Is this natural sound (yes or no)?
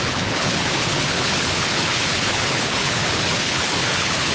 no